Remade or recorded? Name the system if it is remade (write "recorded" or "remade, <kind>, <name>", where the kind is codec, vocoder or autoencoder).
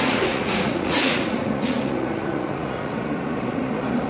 remade, vocoder, Vocos